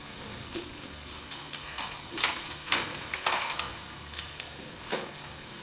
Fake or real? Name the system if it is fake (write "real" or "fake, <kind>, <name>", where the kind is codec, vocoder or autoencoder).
fake, codec, SNAC